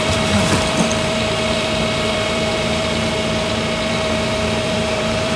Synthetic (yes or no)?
yes